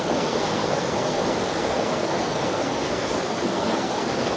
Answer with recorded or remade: remade